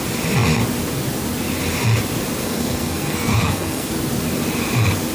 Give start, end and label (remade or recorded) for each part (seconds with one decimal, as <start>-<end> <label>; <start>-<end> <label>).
0.0-2.4 recorded; 2.4-3.9 remade; 3.9-5.1 recorded